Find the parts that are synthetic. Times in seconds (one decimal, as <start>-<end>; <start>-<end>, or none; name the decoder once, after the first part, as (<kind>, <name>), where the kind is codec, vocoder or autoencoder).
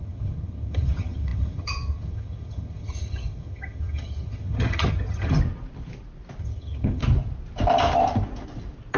0.0-5.4 (vocoder, HiFi-GAN); 6.4-7.0